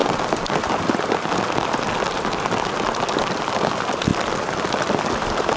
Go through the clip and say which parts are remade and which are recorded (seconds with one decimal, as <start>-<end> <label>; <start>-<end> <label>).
0.0-3.4 recorded; 3.4-5.6 remade